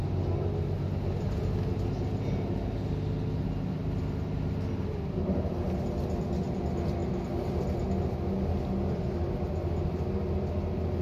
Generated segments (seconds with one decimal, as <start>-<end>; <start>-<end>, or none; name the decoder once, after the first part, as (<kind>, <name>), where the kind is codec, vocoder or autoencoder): none